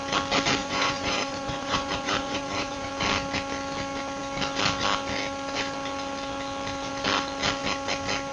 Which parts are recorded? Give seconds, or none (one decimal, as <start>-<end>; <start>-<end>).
0.0-0.6; 2.9-8.3